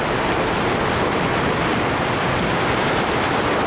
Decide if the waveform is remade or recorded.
recorded